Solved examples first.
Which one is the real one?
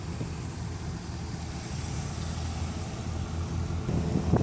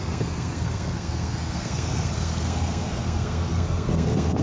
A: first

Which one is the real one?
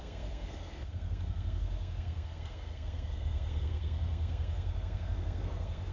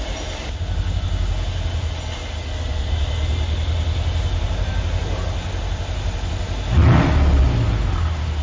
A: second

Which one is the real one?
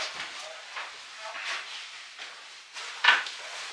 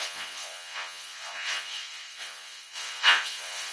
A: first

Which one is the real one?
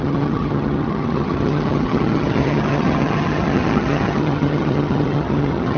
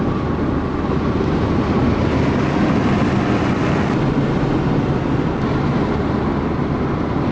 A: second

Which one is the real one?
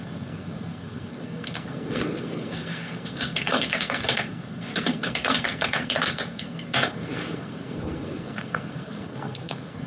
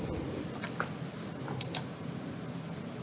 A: second